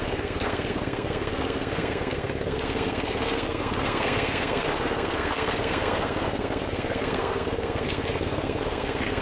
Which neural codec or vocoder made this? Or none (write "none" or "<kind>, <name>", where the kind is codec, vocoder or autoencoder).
codec, SNAC